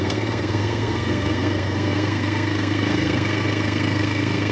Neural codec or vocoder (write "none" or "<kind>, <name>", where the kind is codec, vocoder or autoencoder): codec, SNAC